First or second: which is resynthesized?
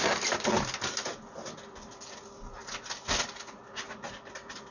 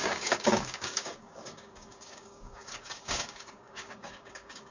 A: second